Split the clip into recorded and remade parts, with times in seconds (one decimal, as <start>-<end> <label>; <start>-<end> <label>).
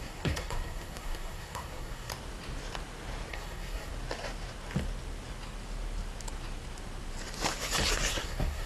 0.0-2.1 remade; 2.1-3.3 recorded; 3.3-3.9 remade; 3.9-8.1 recorded; 8.1-8.7 remade